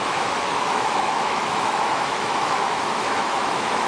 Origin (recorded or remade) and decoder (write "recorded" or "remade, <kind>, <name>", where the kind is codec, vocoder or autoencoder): remade, autoencoder, DAC-VAE